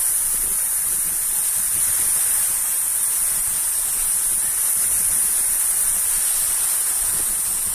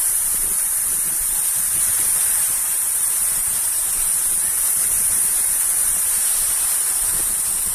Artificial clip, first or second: second